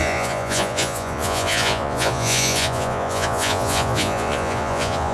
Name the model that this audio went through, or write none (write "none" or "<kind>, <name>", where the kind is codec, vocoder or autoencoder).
vocoder, Vocos